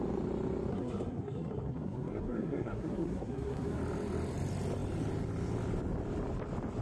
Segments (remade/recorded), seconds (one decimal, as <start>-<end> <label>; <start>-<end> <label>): 0.0-0.7 recorded; 0.7-3.8 remade; 3.8-6.8 recorded